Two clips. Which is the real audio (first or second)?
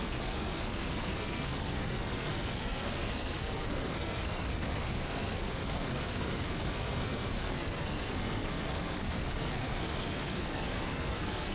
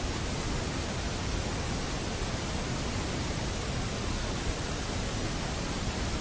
second